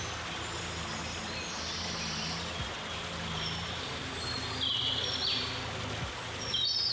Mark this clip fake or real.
real